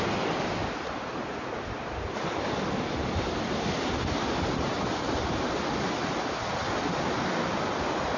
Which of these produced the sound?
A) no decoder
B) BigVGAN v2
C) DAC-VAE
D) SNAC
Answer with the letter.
A